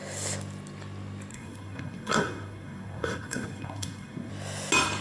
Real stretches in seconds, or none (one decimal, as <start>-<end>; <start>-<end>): 0.0-1.3; 4.3-5.0